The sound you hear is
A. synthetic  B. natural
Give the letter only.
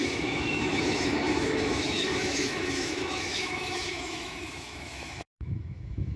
A